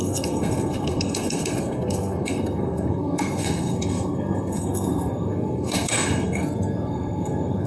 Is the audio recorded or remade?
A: remade